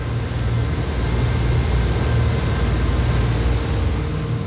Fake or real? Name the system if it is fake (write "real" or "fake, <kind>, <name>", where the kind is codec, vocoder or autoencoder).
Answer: real